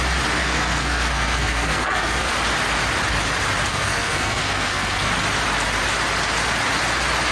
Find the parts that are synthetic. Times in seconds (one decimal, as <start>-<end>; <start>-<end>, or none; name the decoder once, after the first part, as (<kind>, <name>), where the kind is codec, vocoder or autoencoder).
0.4-2.3 (codec, SNAC); 3.7-5.1

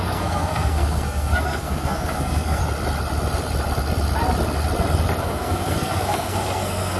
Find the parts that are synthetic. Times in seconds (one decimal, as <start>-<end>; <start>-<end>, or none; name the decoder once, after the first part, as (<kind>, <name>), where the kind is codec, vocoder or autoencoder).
0.0-2.6 (codec, SNAC); 5.2-7.0